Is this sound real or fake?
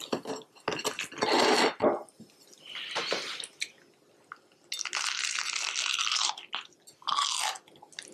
real